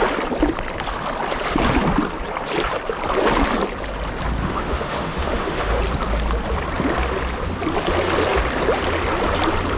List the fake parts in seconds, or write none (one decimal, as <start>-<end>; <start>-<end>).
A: 4.4-5.8